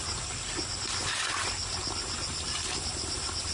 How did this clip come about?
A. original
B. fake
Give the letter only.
A